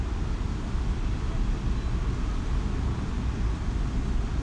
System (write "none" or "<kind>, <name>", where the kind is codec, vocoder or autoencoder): none